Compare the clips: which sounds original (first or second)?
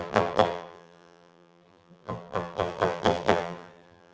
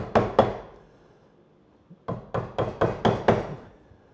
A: second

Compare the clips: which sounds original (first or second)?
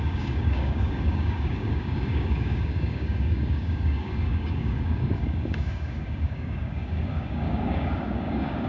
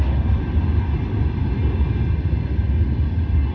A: second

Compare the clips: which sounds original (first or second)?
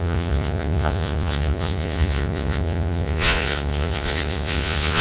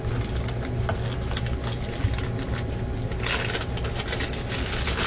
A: second